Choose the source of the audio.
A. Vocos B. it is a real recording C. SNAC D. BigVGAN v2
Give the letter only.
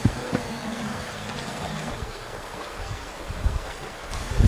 C